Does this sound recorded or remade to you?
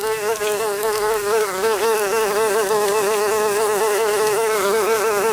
remade